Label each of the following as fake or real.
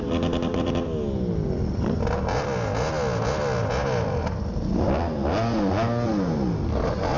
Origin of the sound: real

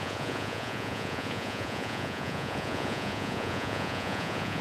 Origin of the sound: fake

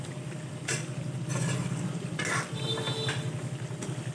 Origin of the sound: real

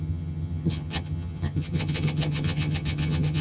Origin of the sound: fake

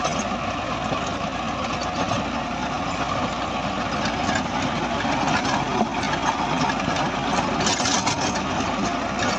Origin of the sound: real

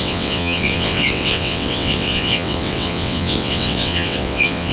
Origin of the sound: fake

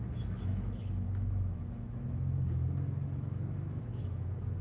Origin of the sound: fake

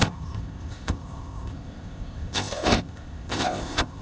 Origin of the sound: fake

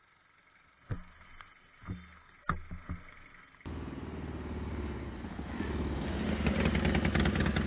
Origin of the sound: real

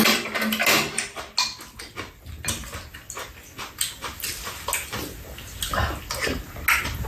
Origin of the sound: real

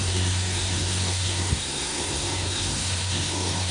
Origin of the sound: fake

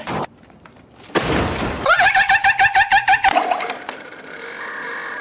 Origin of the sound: real